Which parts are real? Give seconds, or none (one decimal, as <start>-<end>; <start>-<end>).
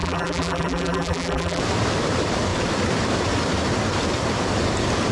1.6-5.1